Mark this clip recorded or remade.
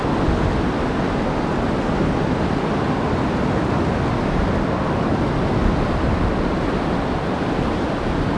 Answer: recorded